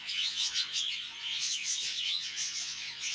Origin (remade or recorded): remade